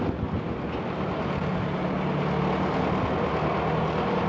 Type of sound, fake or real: real